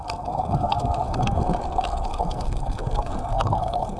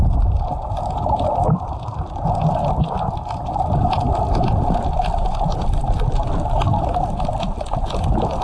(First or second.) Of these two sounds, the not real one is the first